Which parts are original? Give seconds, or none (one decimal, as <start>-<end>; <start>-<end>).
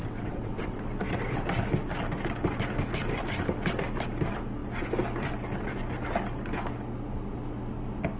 0.8-8.2